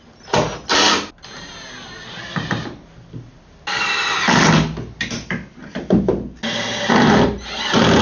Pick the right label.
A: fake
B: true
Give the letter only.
B